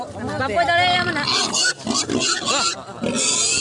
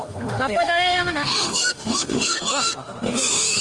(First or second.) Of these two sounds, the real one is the first